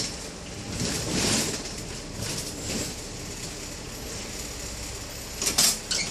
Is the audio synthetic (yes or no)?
no